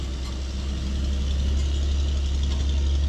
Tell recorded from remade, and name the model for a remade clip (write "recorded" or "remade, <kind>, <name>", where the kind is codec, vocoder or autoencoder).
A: recorded